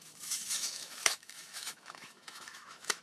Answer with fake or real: fake